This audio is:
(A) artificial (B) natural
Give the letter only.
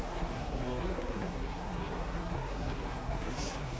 A